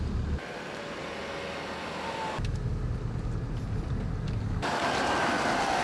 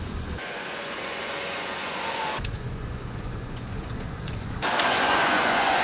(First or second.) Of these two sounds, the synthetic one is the second